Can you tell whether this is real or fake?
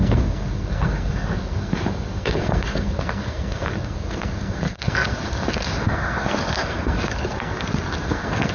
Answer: fake